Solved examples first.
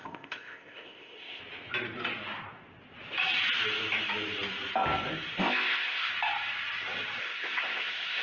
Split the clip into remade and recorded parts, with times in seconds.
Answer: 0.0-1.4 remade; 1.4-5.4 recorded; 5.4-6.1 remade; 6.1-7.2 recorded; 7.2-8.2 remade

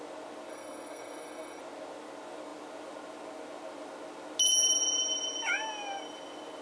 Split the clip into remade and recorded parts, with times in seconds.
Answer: 0.0-0.5 recorded; 0.5-1.6 remade; 1.6-6.6 recorded

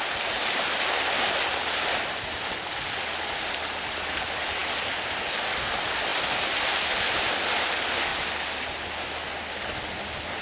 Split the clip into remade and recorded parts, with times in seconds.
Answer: 0.0-8.1 recorded; 8.1-8.8 remade; 8.8-10.4 recorded